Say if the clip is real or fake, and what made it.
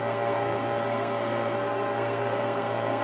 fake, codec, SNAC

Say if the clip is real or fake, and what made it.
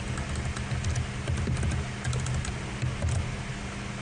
real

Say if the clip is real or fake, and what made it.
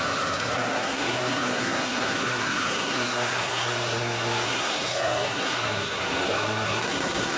fake, codec, SNAC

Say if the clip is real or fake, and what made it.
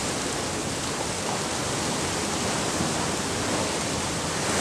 real